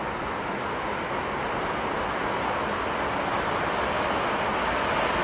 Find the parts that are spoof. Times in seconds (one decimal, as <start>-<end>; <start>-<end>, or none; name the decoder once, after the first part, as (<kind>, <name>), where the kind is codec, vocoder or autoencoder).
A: none